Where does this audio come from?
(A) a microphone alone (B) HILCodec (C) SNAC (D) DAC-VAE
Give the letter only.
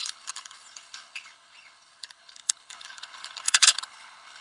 B